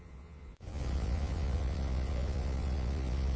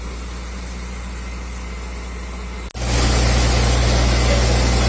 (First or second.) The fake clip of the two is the first